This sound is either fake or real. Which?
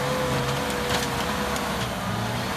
real